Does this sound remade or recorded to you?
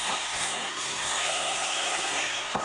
remade